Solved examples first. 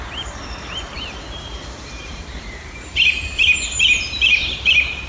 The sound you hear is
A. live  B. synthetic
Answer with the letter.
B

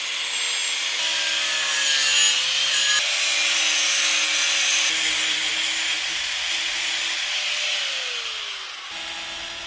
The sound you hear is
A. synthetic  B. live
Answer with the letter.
B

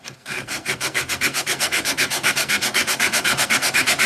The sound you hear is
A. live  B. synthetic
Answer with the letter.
B